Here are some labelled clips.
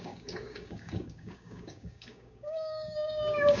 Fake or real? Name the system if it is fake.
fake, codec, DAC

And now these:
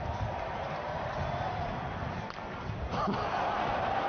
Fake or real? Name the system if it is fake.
fake, vocoder, BigVGAN v2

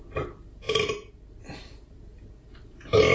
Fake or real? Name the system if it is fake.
real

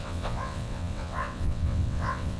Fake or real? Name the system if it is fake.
fake, vocoder, WaveNeXt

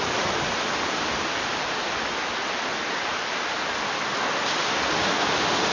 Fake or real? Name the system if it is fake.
real